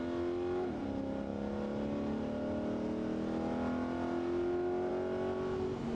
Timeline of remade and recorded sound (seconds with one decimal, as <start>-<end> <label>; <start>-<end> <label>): 0.0-6.0 recorded